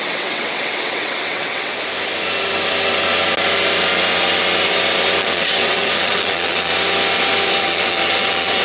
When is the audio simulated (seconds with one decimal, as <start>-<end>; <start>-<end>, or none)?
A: 0.0-1.7; 5.2-6.7; 7.6-8.6